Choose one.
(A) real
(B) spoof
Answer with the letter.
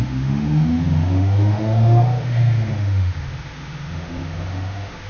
B